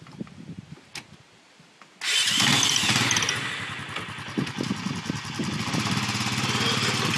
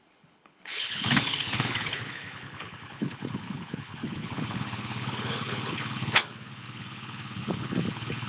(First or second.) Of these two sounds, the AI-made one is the second